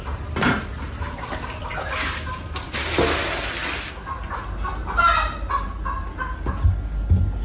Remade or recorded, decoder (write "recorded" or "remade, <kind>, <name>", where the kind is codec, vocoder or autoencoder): recorded